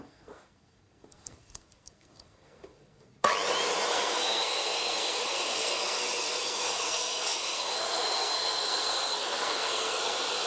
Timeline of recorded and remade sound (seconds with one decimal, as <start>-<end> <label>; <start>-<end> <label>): 0.0-3.3 remade; 3.3-3.9 recorded; 3.9-10.5 remade